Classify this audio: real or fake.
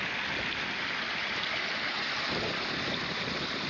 fake